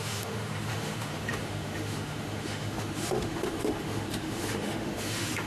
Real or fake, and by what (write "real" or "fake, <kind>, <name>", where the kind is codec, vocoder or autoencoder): fake, autoencoder, DAC-VAE